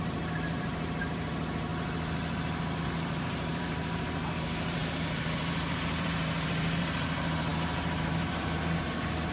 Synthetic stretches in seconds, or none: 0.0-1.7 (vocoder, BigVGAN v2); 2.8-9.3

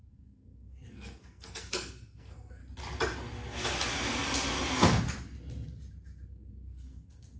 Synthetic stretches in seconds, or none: 0.0-2.6 (codec, SNAC); 6.3-7.4

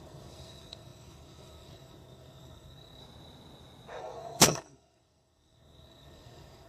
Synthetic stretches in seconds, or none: 0.0-3.0 (codec, SNAC); 4.0-6.7